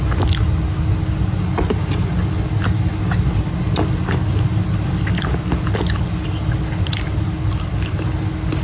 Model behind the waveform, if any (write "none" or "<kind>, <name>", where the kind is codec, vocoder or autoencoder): none